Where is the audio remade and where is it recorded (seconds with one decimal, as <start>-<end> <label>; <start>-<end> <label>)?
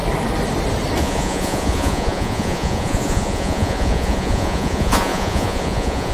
0.0-1.0 recorded; 1.0-6.1 remade